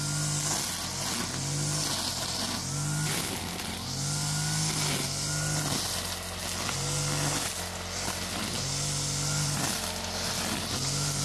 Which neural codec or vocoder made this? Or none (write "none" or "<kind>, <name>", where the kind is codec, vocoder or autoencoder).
none